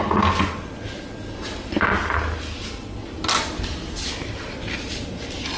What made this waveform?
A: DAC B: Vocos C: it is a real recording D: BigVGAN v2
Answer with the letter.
C